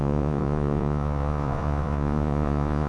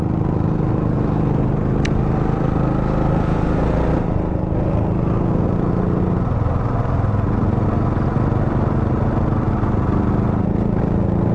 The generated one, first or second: first